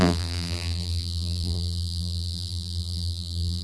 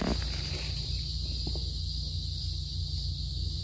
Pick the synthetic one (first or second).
first